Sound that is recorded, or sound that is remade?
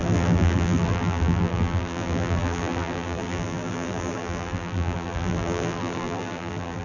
remade